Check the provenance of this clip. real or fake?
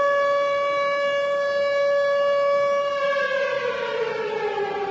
real